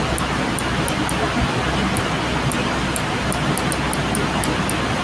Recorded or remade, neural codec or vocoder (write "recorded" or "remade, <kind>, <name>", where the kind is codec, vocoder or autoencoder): recorded